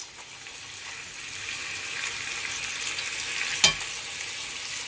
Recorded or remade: recorded